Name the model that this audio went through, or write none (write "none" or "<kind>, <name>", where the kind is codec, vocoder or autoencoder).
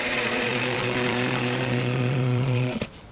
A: vocoder, Vocos